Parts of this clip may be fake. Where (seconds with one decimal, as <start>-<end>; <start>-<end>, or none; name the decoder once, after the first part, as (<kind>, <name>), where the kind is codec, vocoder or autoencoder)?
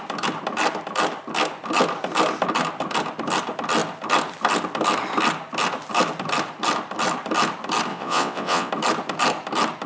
7.9-8.7 (vocoder, WaveNeXt)